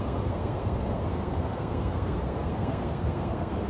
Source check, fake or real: fake